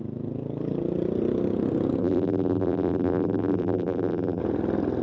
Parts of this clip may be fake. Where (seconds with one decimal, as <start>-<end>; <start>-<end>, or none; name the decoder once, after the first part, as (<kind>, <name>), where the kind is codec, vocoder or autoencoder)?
2.0-4.4 (vocoder, BigVGAN v2)